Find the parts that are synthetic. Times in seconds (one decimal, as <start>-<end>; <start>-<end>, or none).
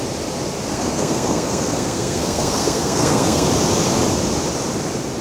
0.7-3.5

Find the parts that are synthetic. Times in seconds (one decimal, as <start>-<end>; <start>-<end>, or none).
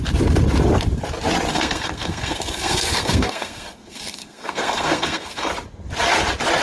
1.5-5.5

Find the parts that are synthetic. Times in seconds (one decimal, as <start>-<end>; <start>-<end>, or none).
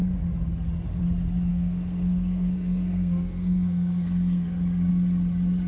1.5-4.9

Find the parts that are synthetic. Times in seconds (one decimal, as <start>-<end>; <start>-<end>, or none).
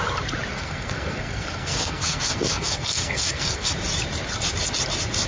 0.5-3.7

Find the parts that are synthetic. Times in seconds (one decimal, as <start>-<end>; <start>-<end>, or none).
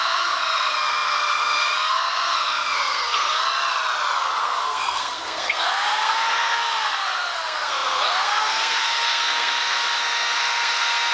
0.0-3.4; 4.4-11.1